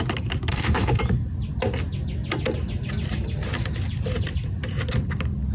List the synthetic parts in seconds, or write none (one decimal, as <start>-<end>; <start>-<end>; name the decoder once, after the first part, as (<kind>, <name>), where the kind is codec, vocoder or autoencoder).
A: 0.5-1.0 (autoencoder, DAC-VAE)